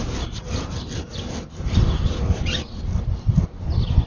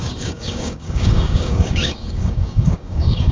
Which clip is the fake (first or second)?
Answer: second